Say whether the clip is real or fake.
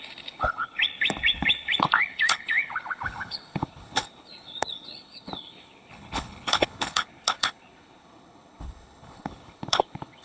fake